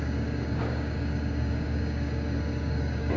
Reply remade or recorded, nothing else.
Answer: remade